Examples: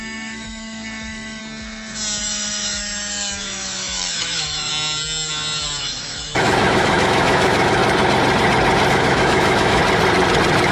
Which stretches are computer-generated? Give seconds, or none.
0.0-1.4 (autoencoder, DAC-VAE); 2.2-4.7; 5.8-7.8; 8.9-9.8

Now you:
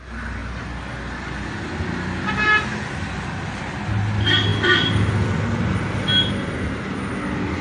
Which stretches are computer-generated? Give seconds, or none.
none

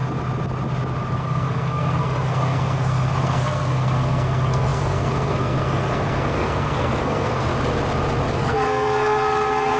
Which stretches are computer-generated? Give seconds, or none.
1.1-7.5 (codec, SNAC); 8.3-9.8

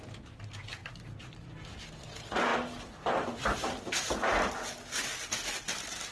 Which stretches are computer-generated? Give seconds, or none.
none

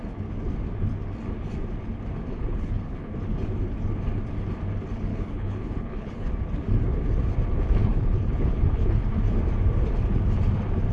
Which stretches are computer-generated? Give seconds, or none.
2.3-3.1 (codec, HILCodec); 5.1-6.3; 7.8-9.0

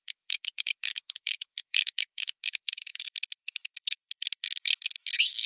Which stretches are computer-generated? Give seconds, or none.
0.0-5.5 (codec, SNAC)